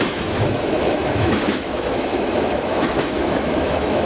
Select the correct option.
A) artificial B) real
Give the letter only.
A